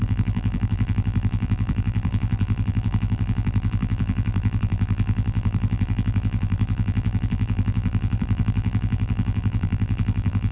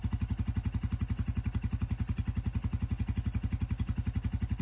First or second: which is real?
second